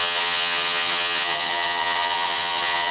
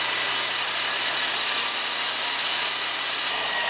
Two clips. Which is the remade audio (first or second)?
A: first